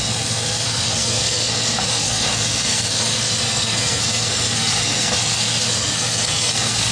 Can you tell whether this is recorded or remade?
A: remade